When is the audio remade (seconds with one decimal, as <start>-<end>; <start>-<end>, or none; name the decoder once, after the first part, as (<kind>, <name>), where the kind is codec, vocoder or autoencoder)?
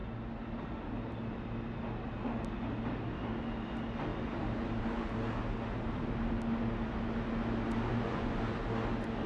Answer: 7.9-8.4 (vocoder, Vocos)